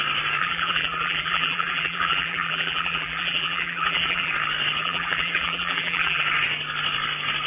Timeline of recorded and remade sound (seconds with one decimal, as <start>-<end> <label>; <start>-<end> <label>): 0.0-0.4 recorded; 0.4-4.3 remade; 4.3-4.8 recorded; 4.8-6.2 remade; 6.2-7.5 recorded